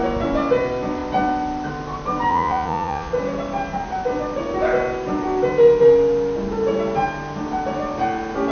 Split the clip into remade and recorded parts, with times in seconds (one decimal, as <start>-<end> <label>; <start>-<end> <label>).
0.0-2.3 recorded; 2.3-3.1 remade; 3.1-8.5 recorded